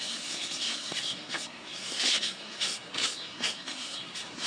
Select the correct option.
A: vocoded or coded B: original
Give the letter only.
A